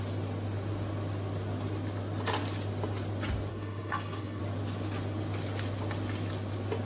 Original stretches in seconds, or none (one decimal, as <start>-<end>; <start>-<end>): 0.0-3.5; 4.4-6.9